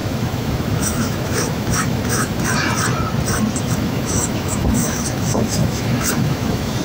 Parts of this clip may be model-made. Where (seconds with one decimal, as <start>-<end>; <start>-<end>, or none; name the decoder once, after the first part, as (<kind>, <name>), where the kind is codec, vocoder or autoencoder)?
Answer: 0.0-2.7 (autoencoder, DAC-VAE); 3.6-6.8